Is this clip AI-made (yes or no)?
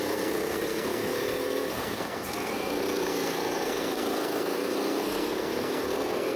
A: yes